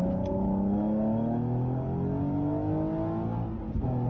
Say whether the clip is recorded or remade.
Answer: recorded